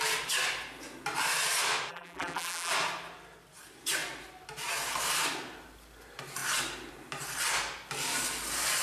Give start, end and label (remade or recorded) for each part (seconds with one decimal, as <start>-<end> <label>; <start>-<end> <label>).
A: 0.0-1.9 recorded; 1.9-2.7 remade; 2.7-8.8 recorded